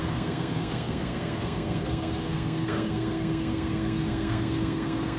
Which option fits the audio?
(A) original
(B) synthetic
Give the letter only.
B